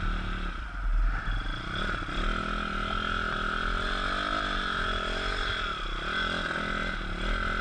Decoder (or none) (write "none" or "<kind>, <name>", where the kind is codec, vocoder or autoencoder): none